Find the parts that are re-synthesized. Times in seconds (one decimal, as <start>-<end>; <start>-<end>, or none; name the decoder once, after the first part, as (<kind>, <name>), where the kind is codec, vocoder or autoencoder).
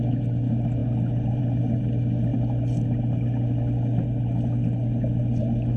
none